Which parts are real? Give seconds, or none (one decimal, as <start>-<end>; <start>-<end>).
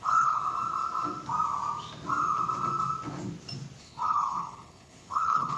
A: 0.4-3.8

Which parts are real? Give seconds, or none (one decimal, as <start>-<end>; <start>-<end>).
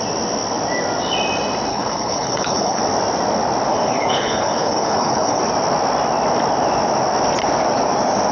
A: 0.0-1.7; 2.8-3.7; 5.4-8.3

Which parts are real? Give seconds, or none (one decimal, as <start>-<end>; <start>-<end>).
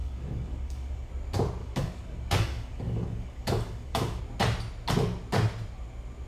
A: 1.1-1.6; 4.2-6.3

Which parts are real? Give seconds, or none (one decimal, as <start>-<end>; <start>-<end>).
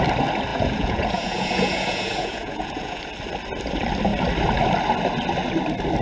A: 0.0-0.5; 3.0-6.0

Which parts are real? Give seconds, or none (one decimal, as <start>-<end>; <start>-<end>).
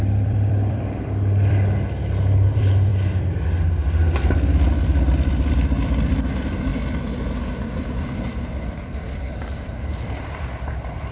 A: 2.9-4.7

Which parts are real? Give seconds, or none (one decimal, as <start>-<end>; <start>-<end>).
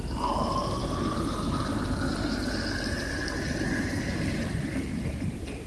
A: 0.0-5.7